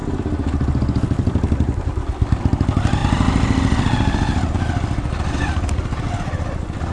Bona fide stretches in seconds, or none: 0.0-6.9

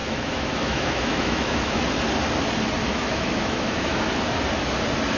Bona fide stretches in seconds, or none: 1.9-2.8; 4.1-5.2